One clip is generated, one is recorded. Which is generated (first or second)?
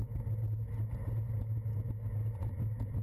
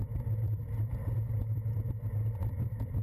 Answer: second